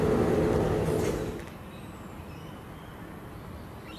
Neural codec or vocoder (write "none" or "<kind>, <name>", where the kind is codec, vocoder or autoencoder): none